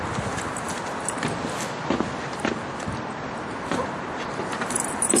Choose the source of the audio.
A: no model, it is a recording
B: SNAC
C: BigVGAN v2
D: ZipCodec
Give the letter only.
A